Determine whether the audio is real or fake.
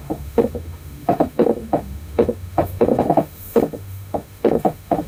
fake